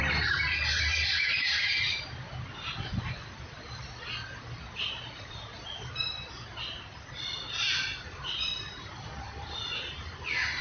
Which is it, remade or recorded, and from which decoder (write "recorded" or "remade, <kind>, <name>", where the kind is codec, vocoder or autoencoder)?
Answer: recorded